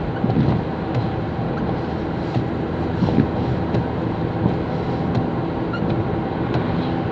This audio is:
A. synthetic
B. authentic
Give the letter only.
B